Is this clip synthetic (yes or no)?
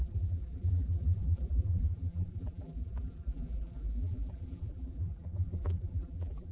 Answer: yes